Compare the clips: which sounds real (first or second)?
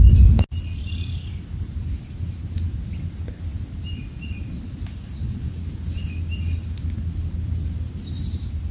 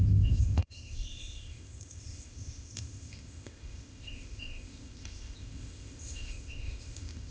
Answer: first